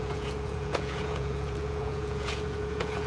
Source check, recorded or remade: remade